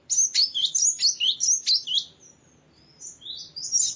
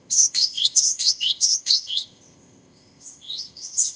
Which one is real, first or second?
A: first